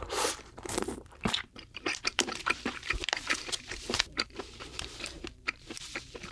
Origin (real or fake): fake